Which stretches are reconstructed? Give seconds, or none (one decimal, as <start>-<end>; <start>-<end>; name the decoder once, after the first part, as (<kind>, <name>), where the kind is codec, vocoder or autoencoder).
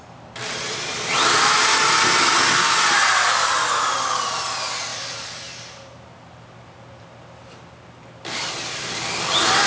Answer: none